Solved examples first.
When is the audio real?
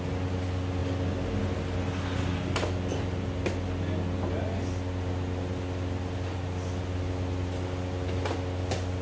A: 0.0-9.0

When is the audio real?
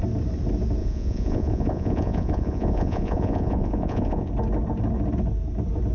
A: 0.0-0.8; 4.3-5.9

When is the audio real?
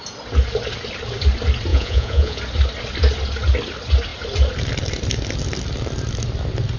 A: 0.0-1.7; 2.4-6.8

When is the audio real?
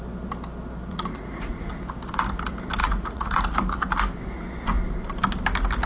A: 0.0-0.9; 1.7-2.8; 3.4-5.9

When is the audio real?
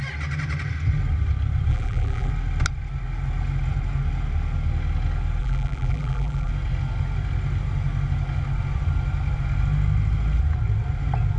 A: 0.0-1.7; 2.3-5.4; 6.5-11.4